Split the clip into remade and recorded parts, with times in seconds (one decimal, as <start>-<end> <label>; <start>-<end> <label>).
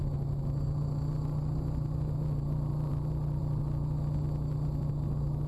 0.0-5.5 recorded